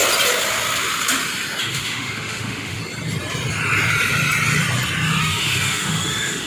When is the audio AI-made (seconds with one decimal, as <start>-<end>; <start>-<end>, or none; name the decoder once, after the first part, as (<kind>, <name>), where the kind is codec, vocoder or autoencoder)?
1.6-2.8 (autoencoder, DAC-VAE); 5.2-6.5